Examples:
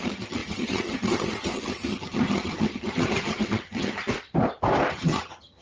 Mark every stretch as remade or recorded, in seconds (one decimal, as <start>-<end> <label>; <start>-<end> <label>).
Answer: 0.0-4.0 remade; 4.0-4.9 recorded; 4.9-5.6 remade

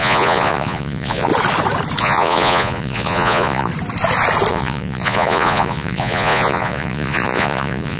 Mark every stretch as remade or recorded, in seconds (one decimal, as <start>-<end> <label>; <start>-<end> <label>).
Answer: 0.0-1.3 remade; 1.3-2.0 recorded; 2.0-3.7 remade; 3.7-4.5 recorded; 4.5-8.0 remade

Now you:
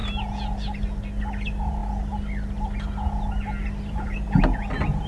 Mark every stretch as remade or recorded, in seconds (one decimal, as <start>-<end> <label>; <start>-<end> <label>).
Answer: 0.0-5.1 recorded

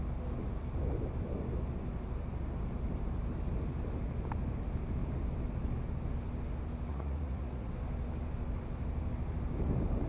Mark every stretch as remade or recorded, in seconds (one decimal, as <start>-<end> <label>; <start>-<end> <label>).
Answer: 0.0-6.9 recorded; 6.9-7.7 remade; 7.7-10.1 recorded

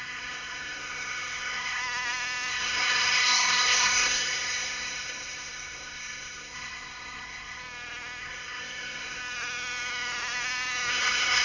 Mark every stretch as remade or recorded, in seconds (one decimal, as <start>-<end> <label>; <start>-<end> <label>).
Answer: 0.0-1.8 remade; 1.8-2.5 recorded; 2.5-7.6 remade; 7.6-8.2 recorded; 8.2-9.2 remade; 9.2-10.9 recorded; 10.9-11.4 remade

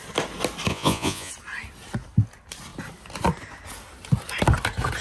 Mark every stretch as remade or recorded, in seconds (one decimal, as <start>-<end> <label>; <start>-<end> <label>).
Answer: 0.0-0.7 recorded; 0.7-1.3 remade; 1.3-5.0 recorded

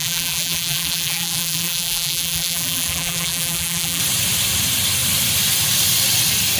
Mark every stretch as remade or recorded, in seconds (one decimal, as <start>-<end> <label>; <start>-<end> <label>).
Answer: 0.0-4.0 remade; 4.0-6.6 recorded

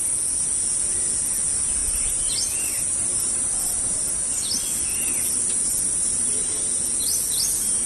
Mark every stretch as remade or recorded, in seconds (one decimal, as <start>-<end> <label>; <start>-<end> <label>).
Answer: 0.0-1.8 recorded; 1.8-2.5 remade; 2.5-3.0 recorded; 3.0-4.0 remade; 4.0-4.9 recorded; 4.9-6.8 remade; 6.8-7.9 recorded